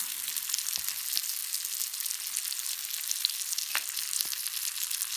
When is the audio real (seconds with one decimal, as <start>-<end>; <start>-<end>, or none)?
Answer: 0.0-5.2